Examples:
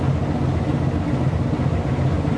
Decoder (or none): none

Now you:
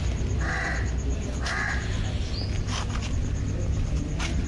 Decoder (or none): none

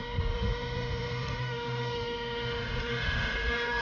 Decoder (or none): autoencoder, DAC-VAE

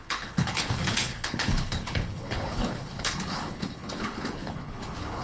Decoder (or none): codec, HILCodec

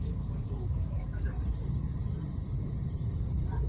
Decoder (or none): vocoder, BigVGAN v2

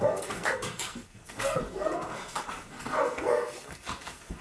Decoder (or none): codec, SNAC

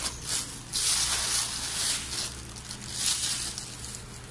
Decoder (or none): none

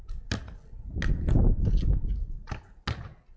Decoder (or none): none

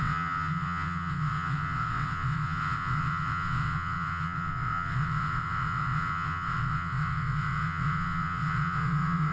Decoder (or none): vocoder, WaveNeXt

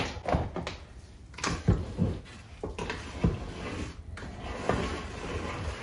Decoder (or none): none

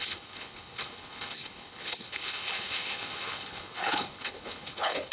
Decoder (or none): codec, HILCodec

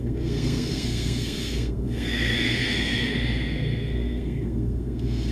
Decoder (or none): codec, SNAC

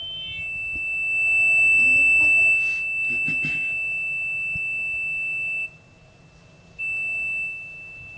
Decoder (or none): none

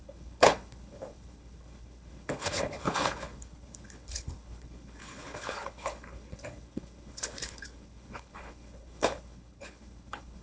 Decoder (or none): codec, HILCodec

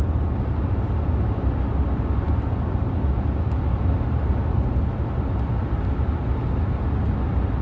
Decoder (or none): none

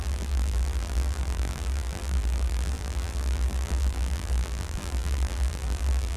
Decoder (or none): vocoder, BigVGAN v2